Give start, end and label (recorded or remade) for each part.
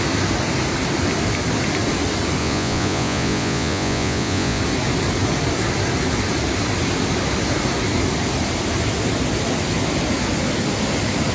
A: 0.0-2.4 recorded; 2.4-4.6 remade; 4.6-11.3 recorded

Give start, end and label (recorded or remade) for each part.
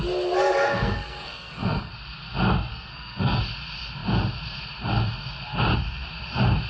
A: 0.0-0.6 recorded; 0.6-1.9 remade; 1.9-2.7 recorded; 2.7-3.4 remade; 3.4-6.7 recorded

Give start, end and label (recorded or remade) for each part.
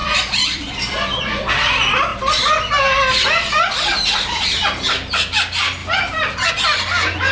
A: 0.0-1.5 remade; 1.5-5.8 recorded; 5.8-6.5 remade; 6.5-7.3 recorded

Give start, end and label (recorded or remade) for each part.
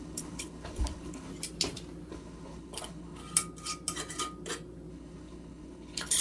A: 0.0-1.3 remade; 1.3-2.1 recorded; 2.1-3.2 remade; 3.2-4.9 recorded; 4.9-6.2 remade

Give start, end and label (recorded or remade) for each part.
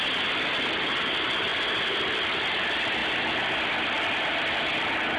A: 0.0-5.2 recorded